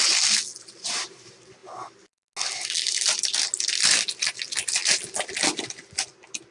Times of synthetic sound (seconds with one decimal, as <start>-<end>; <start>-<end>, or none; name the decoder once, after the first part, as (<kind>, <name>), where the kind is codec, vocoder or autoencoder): none